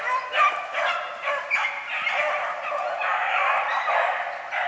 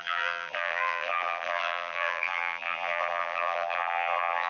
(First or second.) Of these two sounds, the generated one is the second